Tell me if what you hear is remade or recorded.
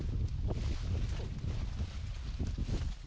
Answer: recorded